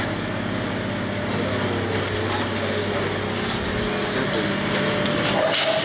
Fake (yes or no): no